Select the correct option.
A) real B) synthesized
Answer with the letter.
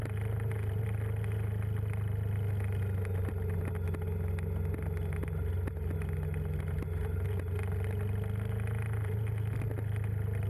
A